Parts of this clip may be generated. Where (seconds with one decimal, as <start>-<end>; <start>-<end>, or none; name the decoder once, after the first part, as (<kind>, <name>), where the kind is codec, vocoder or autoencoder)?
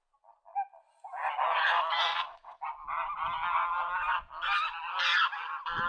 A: 2.1-2.6 (vocoder, WaveNeXt)